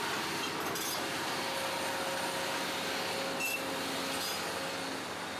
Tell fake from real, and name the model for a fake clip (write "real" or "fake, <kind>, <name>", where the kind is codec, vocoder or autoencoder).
real